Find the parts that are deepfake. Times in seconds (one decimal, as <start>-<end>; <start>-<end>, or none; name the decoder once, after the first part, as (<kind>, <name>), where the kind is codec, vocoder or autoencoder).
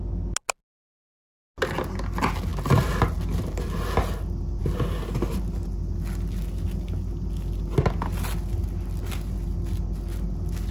none